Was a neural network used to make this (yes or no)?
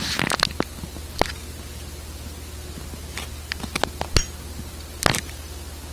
no